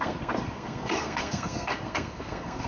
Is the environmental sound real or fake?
fake